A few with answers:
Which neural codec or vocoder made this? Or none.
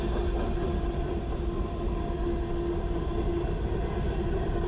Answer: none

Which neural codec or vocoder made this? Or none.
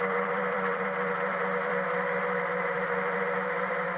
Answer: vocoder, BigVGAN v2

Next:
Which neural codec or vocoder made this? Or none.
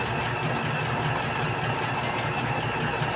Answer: none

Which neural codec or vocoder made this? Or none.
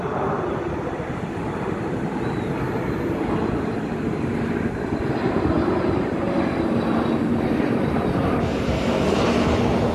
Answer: vocoder, BigVGAN v2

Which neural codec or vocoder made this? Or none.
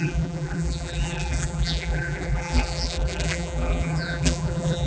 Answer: vocoder, BigVGAN v2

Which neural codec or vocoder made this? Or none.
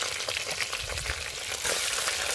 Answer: none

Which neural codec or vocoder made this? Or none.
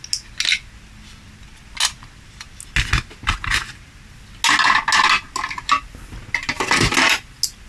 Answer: none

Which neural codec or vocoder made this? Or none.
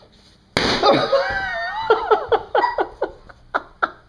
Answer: none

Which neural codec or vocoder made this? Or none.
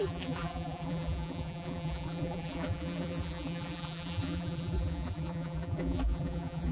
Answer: vocoder, BigVGAN v2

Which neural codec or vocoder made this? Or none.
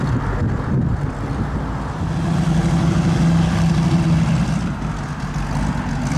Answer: none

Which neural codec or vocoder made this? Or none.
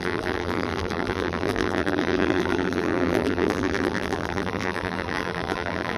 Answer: vocoder, BigVGAN v2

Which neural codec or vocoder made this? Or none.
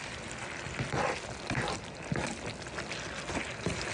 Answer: none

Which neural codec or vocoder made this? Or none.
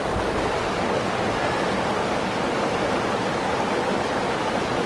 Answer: none